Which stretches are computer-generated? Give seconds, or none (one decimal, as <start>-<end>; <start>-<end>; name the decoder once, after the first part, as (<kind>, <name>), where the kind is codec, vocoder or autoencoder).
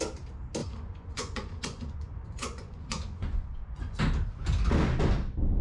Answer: 0.6-4.0 (vocoder, Vocos)